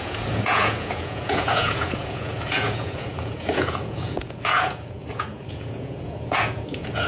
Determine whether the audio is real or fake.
fake